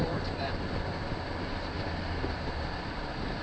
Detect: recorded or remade recorded